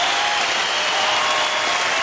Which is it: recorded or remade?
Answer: recorded